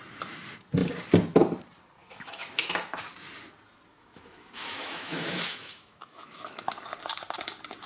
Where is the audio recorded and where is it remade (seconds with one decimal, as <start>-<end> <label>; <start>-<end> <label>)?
0.0-2.0 recorded; 2.0-2.7 remade; 2.7-3.9 recorded; 3.9-6.7 remade; 6.7-7.9 recorded